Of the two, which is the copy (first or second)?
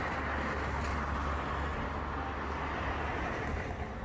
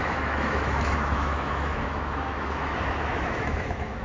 second